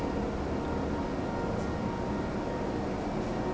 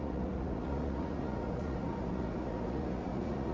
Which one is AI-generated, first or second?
second